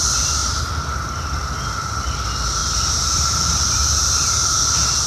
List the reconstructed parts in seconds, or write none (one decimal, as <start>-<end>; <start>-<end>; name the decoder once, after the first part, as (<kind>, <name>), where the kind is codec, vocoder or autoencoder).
0.4-1.3 (vocoder, BigVGAN v2); 2.6-5.1